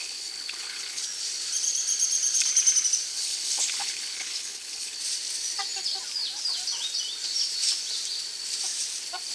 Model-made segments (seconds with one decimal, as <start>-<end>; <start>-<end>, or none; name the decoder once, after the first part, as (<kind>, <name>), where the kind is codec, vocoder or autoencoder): 0.0-1.0 (codec, HILCodec); 3.1-5.0